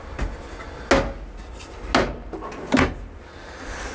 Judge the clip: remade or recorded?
recorded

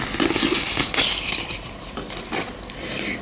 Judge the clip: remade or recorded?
recorded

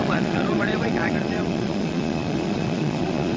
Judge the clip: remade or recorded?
remade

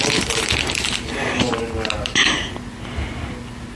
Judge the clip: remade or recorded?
recorded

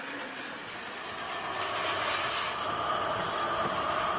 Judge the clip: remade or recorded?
recorded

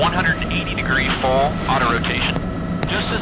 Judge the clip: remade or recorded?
recorded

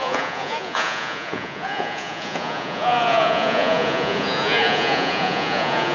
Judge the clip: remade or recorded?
remade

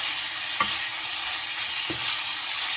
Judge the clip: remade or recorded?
recorded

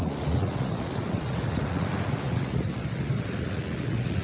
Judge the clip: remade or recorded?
remade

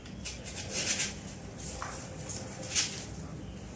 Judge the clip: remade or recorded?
recorded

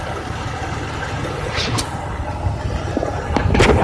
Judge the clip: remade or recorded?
recorded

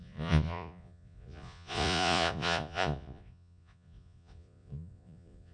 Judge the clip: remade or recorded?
remade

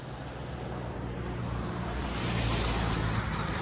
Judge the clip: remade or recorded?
recorded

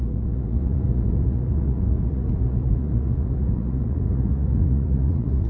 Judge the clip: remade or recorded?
remade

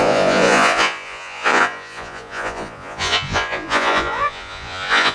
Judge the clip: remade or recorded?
remade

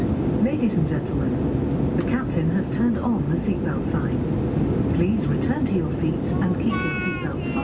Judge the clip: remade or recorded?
recorded